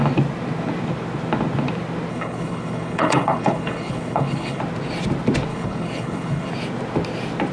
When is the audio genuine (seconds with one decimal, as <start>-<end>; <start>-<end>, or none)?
0.0-2.1; 4.6-5.5; 6.5-7.5

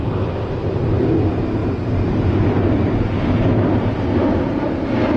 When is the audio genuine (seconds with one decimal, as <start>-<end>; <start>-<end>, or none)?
0.0-5.2

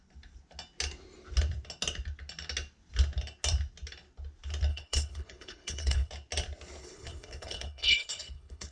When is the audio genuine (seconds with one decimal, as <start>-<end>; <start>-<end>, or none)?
0.0-4.7; 6.1-6.8

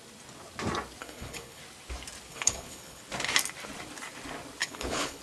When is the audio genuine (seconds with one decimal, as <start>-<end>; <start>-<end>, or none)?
0.0-1.0; 1.6-2.3; 3.0-4.6

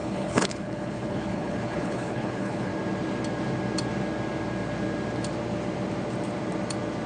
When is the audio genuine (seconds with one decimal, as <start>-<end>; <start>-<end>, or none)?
2.7-7.1